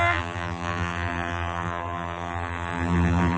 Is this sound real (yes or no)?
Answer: no